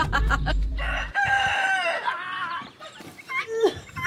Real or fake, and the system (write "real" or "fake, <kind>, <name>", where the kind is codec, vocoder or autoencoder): fake, vocoder, BigVGAN v2